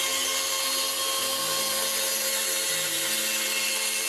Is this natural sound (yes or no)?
yes